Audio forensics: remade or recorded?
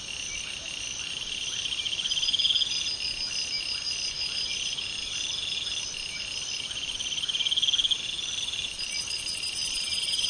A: recorded